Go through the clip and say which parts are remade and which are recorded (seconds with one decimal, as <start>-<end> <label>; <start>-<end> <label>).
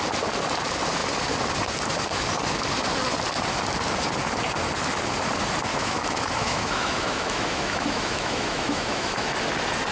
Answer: 0.0-5.7 recorded; 5.7-9.3 remade; 9.3-9.9 recorded